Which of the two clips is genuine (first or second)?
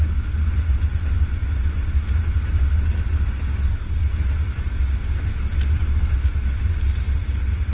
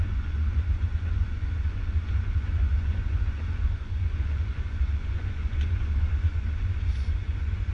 first